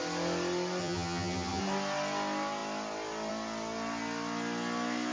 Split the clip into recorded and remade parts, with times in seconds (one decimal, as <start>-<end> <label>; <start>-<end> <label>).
0.0-0.8 recorded; 0.8-1.6 remade; 1.6-5.1 recorded